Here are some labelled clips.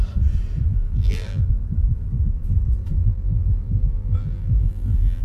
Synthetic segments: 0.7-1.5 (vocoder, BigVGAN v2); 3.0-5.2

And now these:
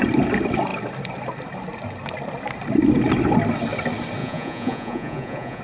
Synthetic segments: 4.2-5.6 (vocoder, Vocos)